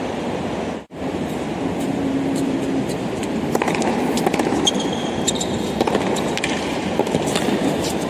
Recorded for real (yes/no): no